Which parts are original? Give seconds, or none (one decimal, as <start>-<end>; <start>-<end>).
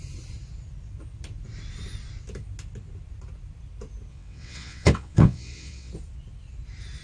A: 0.0-4.1; 5.9-7.0